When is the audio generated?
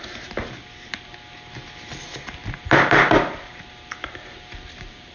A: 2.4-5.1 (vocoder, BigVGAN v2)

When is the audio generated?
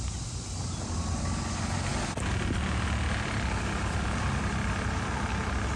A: none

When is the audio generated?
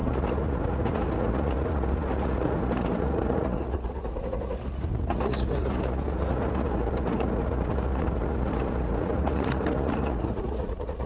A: 0.0-11.1 (vocoder, Vocos)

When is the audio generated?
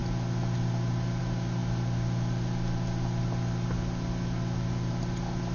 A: none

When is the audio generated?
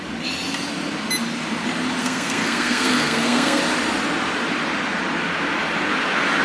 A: 2.0-3.6 (codec, SNAC)